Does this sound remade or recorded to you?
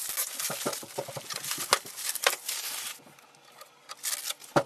recorded